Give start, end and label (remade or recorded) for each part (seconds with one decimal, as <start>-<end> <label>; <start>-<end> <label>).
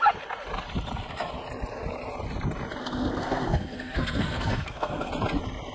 0.0-2.8 recorded; 2.8-5.1 remade; 5.1-5.7 recorded